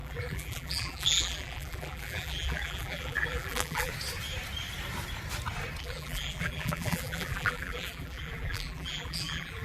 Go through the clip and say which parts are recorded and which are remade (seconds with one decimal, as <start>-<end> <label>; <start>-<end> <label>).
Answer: 0.0-3.9 remade; 3.9-5.8 recorded; 5.8-9.6 remade